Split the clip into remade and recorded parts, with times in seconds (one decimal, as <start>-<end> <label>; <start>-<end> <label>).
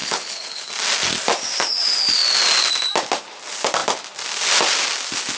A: 0.0-0.7 remade; 0.7-5.4 recorded